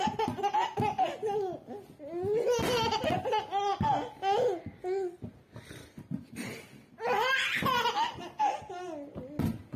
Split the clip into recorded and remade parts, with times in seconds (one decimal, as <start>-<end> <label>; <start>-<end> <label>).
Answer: 0.0-9.8 recorded